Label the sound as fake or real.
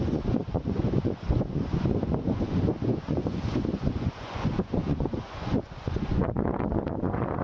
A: fake